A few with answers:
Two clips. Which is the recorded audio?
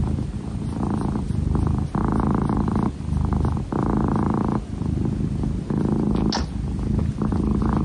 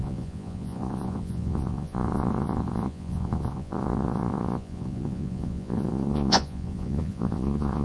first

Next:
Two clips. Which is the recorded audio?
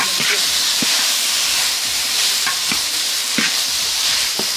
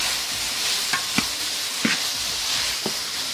second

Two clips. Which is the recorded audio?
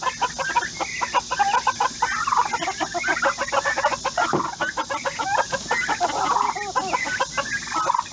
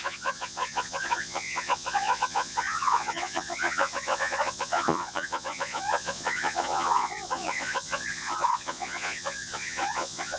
first